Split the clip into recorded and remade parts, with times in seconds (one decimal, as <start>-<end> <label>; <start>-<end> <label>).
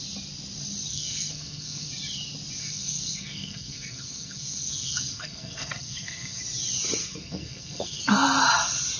0.0-0.9 recorded; 0.9-1.9 remade; 1.9-2.6 recorded; 2.6-6.4 remade; 6.4-7.0 recorded; 7.0-8.0 remade; 8.0-9.0 recorded